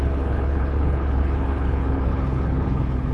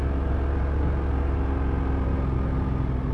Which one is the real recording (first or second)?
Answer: second